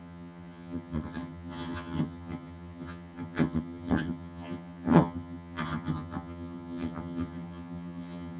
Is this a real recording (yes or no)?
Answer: no